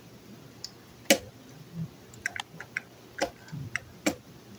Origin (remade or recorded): recorded